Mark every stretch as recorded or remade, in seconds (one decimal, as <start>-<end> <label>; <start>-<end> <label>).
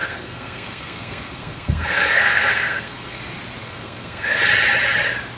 0.0-3.2 remade; 3.2-3.6 recorded; 3.6-4.4 remade; 4.4-5.4 recorded